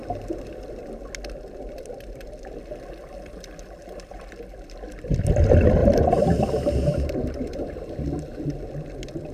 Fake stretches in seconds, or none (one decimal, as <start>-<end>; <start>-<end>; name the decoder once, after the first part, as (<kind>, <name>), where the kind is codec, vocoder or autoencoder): 5.8-7.1 (vocoder, BigVGAN v2)